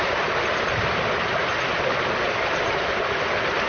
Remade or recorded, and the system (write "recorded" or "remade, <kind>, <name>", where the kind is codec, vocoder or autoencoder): recorded